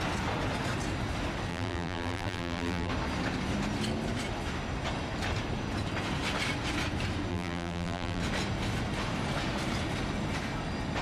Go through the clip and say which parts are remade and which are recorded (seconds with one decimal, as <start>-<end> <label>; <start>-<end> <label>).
0.0-1.5 recorded; 1.5-2.9 remade; 2.9-7.3 recorded; 7.3-8.2 remade; 8.2-11.0 recorded